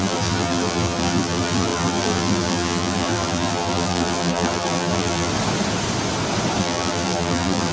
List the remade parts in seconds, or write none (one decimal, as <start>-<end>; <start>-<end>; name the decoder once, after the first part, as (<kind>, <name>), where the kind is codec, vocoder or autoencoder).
0.0-5.3 (vocoder, BigVGAN v2); 6.6-7.7